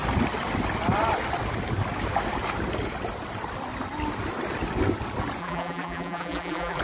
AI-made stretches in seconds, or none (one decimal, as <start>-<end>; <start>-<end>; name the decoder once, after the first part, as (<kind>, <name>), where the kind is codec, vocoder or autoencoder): 5.4-6.8 (vocoder, BigVGAN v2)